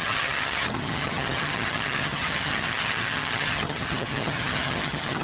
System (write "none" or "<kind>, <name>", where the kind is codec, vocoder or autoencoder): vocoder, HiFi-GAN